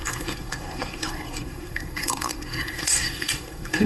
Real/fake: fake